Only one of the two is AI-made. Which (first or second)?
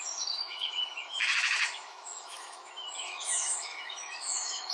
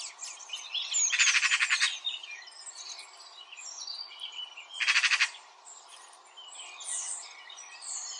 first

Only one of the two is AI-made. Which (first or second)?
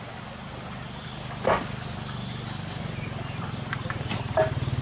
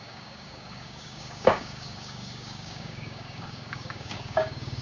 second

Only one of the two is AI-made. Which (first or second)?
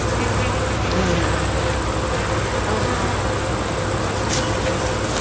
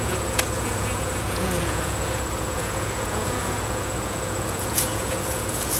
second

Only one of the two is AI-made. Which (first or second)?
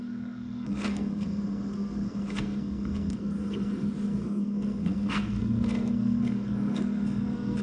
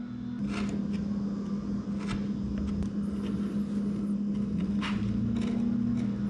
first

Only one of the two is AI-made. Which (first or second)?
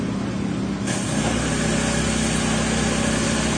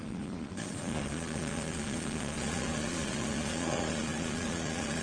second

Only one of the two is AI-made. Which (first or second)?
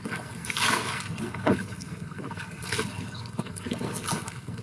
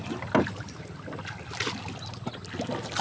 first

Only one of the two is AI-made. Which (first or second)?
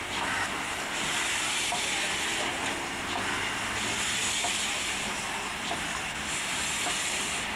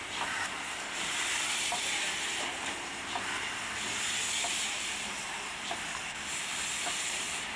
second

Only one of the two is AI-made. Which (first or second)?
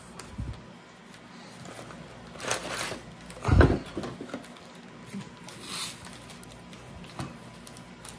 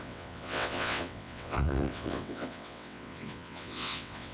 second